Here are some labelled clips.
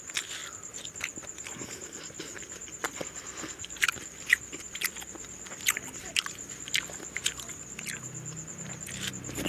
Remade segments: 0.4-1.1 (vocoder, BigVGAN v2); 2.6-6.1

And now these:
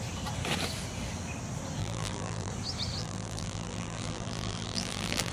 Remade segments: 1.8-2.5 (vocoder, BigVGAN v2); 3.0-5.3